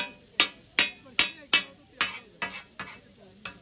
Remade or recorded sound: recorded